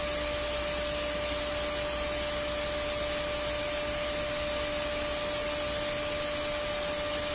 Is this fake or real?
real